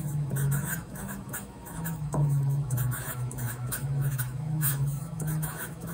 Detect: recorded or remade remade